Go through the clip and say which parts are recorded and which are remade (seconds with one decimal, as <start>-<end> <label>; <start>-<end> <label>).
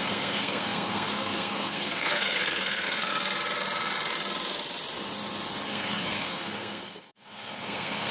0.0-3.1 remade; 3.1-5.7 recorded; 5.7-8.1 remade